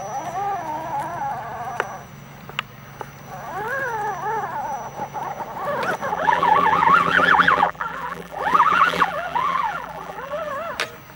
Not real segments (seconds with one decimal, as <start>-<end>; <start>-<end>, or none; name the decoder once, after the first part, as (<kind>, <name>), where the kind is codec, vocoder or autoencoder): 6.1-10.5 (vocoder, BigVGAN v2)

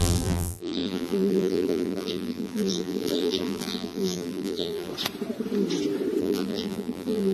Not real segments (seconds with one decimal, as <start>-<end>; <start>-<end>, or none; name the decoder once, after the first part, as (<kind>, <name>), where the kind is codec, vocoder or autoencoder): 0.0-4.9 (vocoder, BigVGAN v2); 6.2-7.3

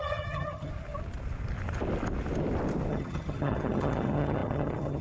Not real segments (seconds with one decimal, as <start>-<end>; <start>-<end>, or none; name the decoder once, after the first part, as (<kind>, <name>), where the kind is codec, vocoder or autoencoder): 0.0-0.7 (vocoder, HiFi-GAN); 2.9-5.0

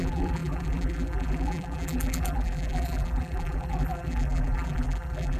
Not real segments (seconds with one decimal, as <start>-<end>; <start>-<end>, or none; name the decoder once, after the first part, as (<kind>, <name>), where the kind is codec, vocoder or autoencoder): 0.0-5.4 (vocoder, BigVGAN v2)

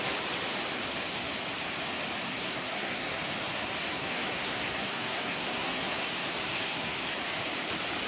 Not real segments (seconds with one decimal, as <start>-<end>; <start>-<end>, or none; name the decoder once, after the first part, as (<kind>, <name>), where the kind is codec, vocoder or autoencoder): 2.3-3.2 (codec, SNAC); 3.9-7.1

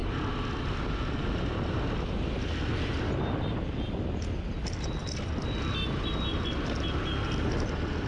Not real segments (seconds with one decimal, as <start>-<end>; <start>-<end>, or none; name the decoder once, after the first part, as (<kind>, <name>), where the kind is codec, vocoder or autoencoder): none

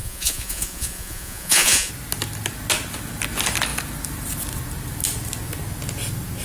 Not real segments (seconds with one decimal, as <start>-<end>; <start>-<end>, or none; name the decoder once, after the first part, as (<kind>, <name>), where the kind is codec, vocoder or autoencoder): 0.0-1.9 (vocoder, Vocos)